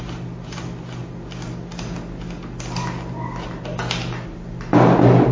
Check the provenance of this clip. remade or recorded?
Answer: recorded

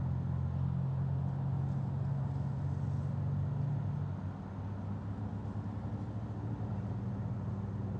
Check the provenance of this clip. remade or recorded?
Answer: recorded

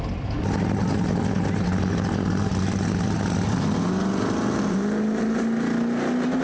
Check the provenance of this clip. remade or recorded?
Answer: recorded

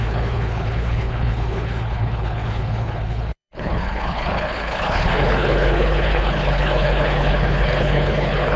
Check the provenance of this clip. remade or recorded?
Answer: remade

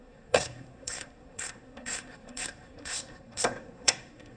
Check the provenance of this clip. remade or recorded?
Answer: remade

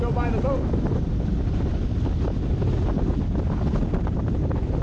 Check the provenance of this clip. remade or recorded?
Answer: recorded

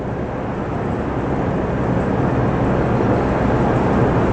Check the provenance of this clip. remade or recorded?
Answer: recorded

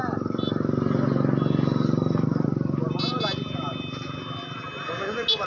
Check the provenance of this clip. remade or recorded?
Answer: recorded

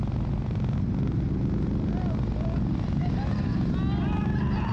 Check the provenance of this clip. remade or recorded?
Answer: recorded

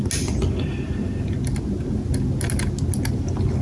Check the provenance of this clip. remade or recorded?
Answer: recorded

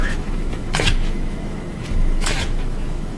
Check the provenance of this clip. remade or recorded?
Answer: remade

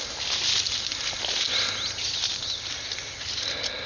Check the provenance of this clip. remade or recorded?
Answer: recorded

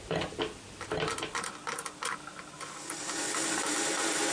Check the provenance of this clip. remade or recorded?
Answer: recorded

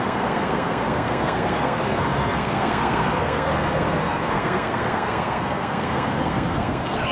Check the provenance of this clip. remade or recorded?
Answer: remade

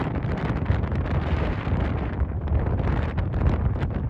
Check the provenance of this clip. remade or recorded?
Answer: remade